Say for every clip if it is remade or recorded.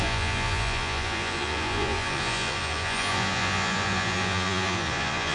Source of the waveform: remade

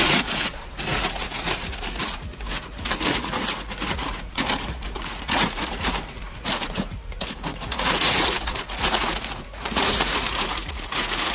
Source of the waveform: remade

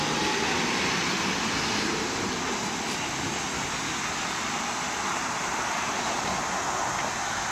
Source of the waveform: recorded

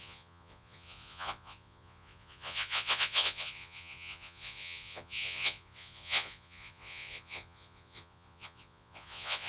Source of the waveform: remade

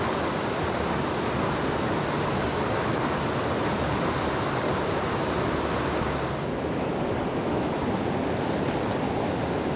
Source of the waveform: recorded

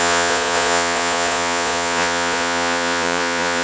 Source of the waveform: remade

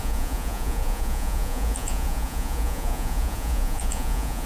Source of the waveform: remade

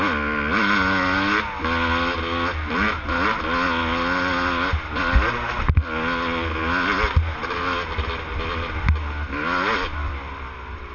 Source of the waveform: recorded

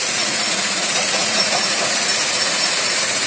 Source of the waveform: remade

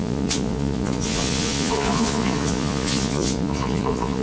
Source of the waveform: remade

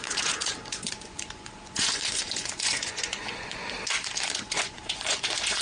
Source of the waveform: remade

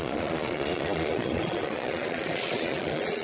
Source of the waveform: remade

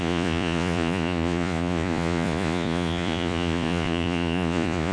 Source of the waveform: remade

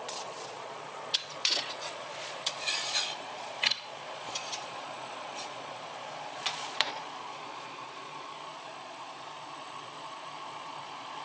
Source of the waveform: remade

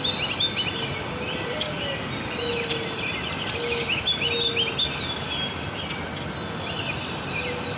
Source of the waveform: recorded